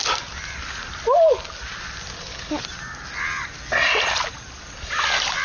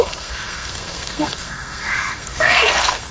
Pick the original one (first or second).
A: first